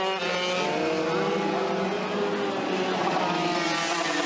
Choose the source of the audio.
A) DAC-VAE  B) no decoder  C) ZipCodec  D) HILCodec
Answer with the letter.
B